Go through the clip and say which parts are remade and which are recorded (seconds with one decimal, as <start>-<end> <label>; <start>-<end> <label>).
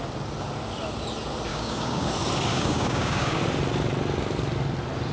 0.0-1.5 recorded; 1.5-2.1 remade; 2.1-2.5 recorded; 2.5-3.4 remade; 3.4-5.1 recorded